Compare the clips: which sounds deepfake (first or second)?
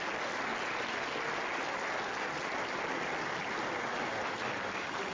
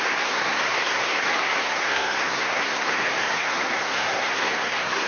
second